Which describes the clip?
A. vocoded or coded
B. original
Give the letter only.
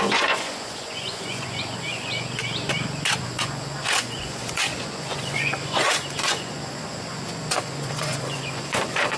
A